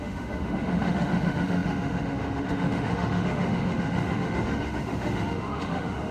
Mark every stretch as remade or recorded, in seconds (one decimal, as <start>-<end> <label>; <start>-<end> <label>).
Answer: 0.0-6.1 remade